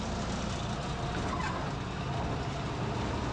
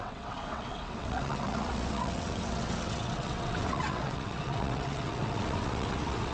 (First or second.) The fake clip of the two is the second